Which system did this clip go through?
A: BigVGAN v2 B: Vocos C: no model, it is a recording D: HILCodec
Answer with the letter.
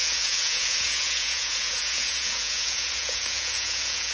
B